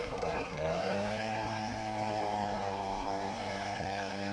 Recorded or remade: remade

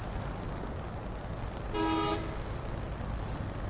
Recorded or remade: recorded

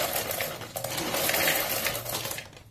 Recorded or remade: recorded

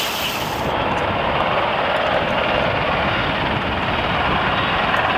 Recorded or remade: recorded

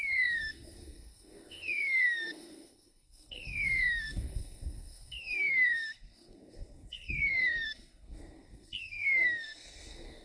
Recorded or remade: remade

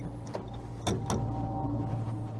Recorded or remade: recorded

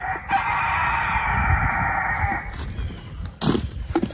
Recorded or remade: recorded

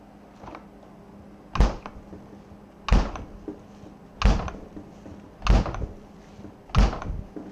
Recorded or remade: recorded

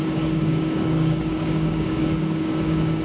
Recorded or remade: remade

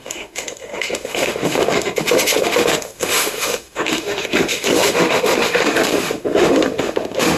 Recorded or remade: remade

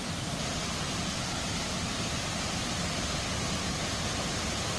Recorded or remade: recorded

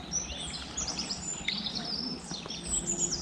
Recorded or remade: recorded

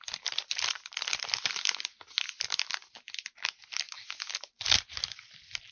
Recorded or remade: recorded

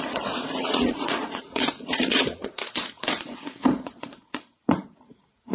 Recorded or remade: remade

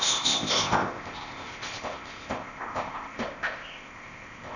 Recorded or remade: remade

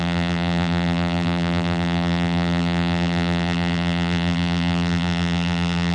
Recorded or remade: remade